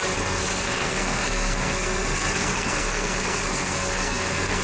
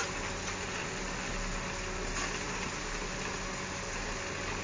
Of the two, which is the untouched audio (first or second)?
second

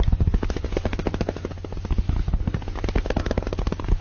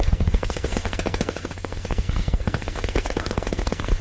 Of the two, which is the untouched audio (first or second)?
first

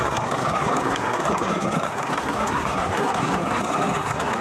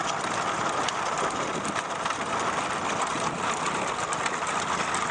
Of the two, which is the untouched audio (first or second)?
second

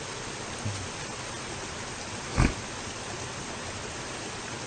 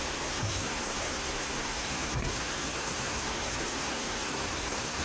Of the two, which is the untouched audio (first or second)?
first